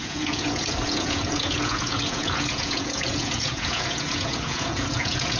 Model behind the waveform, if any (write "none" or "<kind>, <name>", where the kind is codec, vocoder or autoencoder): vocoder, Vocos